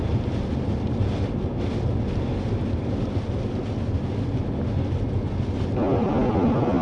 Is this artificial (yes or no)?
no